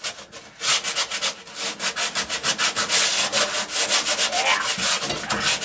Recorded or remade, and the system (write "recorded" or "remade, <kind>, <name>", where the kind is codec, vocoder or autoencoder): recorded